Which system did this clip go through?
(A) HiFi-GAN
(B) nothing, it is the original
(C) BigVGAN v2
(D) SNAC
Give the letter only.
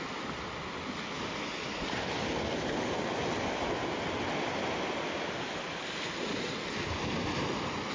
B